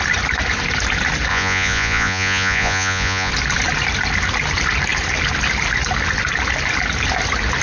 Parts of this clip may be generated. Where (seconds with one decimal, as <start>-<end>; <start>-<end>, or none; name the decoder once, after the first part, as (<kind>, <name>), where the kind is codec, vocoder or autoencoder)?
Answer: 1.3-3.3 (vocoder, Vocos)